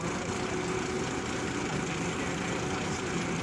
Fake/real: real